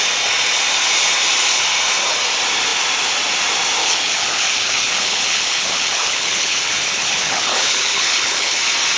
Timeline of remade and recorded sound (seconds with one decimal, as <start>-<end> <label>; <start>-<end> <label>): 0.0-3.8 recorded; 3.8-8.6 remade; 8.6-9.0 recorded